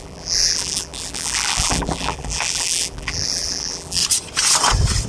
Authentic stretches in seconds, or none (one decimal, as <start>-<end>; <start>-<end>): 4.0-5.1